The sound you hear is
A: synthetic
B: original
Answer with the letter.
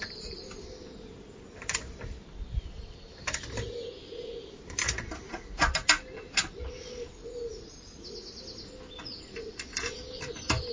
B